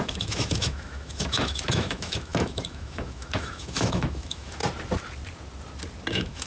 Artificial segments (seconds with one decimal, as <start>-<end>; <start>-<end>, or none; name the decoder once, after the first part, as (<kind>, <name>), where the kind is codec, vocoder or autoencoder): 0.0-4.6 (autoencoder, DAC-VAE); 6.1-6.5